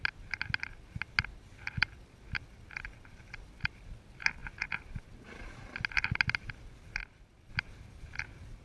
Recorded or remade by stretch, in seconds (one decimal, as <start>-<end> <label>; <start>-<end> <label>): 0.0-8.6 recorded